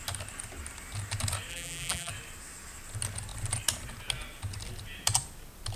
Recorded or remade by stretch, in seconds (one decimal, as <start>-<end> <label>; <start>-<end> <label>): 0.0-1.5 recorded; 1.5-2.1 remade; 2.1-5.8 recorded